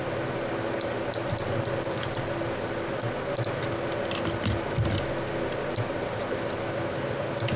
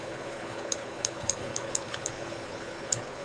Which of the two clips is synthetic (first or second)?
second